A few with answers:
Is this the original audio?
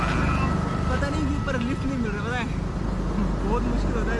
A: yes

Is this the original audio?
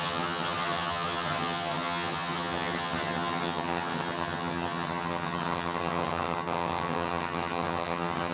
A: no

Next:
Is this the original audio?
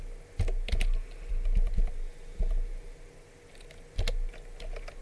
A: yes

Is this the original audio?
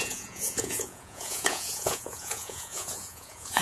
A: no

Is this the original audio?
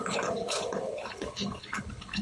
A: no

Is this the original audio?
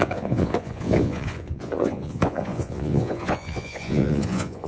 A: no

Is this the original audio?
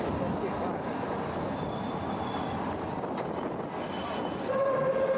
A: yes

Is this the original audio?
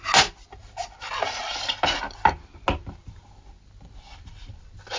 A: yes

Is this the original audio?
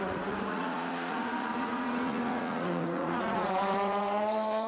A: no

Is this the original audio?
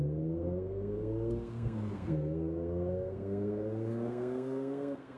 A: no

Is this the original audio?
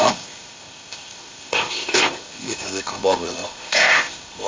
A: no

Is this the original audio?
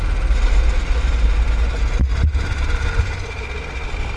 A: yes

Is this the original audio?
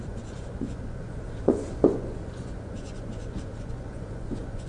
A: no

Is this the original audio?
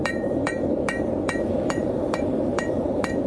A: no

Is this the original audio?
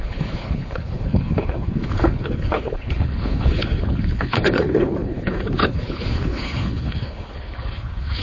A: no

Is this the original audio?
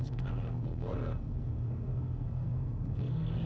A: no